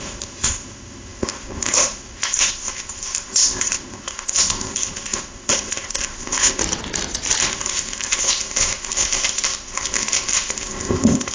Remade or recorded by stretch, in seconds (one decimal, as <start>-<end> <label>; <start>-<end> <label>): 0.0-6.6 remade; 6.6-7.4 recorded; 7.4-11.3 remade

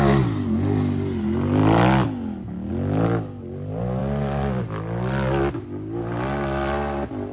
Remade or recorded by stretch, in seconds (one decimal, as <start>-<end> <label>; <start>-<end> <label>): 0.0-7.3 recorded

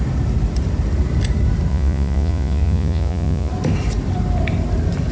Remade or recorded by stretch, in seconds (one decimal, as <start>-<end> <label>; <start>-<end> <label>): 0.0-1.7 recorded; 1.7-3.5 remade; 3.5-5.1 recorded

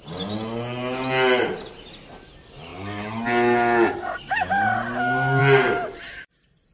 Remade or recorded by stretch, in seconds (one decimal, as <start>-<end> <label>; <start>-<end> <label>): 0.0-6.7 recorded

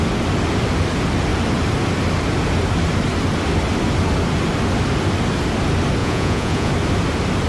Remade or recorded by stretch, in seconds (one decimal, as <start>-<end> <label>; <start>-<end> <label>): 0.0-6.0 recorded; 6.0-6.7 remade; 6.7-7.5 recorded

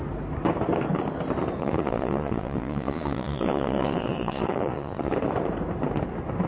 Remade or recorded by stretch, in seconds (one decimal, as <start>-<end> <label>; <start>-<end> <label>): 0.0-1.6 recorded; 1.6-5.1 remade; 5.1-6.5 recorded

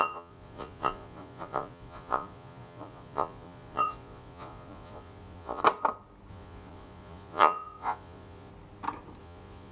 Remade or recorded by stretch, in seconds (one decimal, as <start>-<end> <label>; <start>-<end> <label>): 0.0-5.6 remade; 5.6-6.3 recorded; 6.3-8.5 remade; 8.5-9.2 recorded; 9.2-9.7 remade